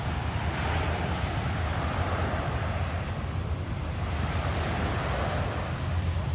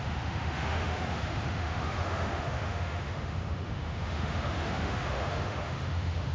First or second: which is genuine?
first